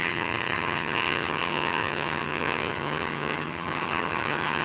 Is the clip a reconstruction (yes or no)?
yes